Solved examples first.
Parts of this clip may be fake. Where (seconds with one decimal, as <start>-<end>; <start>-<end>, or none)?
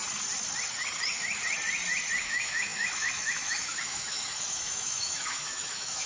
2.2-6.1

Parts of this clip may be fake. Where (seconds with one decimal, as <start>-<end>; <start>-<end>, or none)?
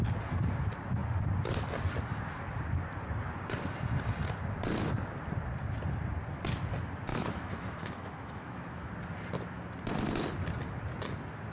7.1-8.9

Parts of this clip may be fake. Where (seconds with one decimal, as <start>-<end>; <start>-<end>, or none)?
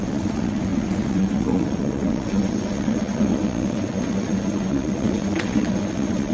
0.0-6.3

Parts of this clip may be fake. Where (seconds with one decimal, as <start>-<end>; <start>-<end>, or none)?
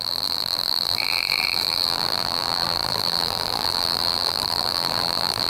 0.0-5.5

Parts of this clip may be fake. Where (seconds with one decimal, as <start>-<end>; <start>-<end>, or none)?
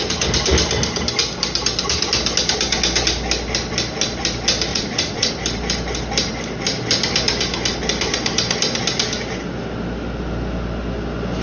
4.7-5.3